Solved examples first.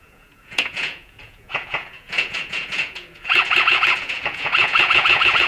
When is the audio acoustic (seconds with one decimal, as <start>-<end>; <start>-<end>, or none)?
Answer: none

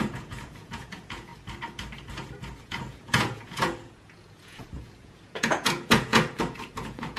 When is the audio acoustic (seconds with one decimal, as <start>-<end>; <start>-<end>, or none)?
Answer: 1.3-2.6

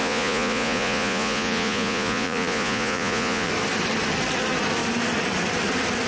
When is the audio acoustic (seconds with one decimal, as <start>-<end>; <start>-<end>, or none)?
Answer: 3.5-6.1

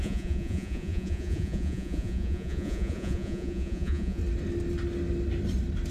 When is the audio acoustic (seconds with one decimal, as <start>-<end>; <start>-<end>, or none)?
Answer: 4.2-5.9

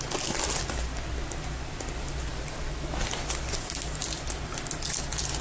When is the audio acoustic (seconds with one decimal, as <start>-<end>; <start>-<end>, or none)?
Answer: 0.0-5.4

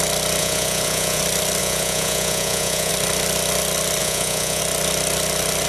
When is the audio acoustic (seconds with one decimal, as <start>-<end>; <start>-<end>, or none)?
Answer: 0.0-0.4; 1.2-1.6; 2.9-4.0; 4.6-5.7